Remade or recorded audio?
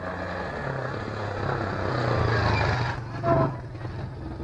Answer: recorded